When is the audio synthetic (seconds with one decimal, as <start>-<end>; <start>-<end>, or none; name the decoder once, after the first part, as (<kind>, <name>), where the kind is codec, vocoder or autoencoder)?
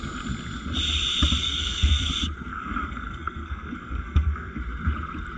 1.4-2.1 (codec, SNAC); 2.5-4.6